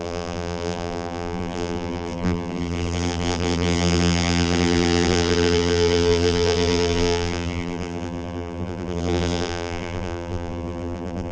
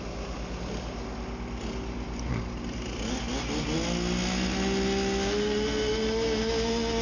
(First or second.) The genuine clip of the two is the second